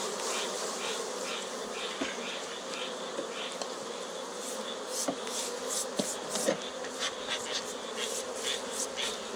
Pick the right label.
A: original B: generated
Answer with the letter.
A